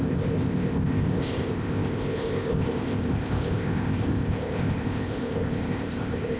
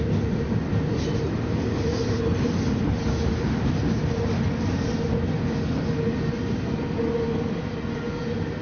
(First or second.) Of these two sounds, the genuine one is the second